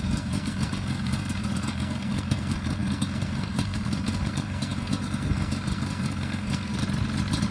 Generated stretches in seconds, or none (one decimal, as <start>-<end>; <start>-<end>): 0.0-6.8